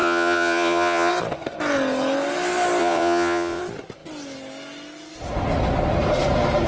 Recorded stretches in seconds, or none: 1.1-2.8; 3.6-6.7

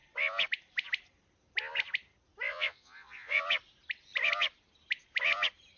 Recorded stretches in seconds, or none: 0.0-2.5; 3.4-5.8

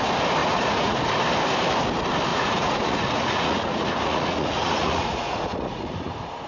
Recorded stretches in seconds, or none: 0.0-0.4; 1.0-2.3; 6.1-6.5

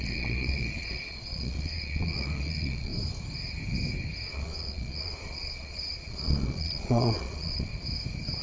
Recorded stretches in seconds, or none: 2.9-4.3; 7.7-8.4

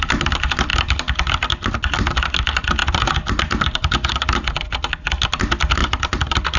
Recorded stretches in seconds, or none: 0.0-5.8

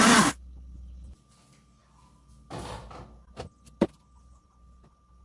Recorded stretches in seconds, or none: 0.0-5.2